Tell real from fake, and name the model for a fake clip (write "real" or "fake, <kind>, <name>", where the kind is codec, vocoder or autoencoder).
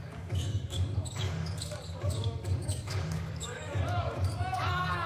fake, codec, DAC